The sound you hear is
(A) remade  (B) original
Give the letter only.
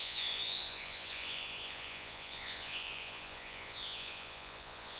A